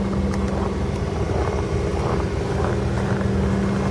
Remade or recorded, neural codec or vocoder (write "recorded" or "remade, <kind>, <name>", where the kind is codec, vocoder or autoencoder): recorded